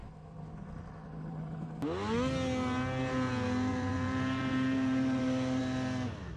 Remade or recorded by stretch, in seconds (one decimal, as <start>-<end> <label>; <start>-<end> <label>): 0.0-3.7 recorded; 3.7-5.6 remade; 5.6-6.4 recorded